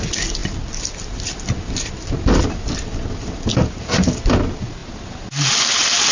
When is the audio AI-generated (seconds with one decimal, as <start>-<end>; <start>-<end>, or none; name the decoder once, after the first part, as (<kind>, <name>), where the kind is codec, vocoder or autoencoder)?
none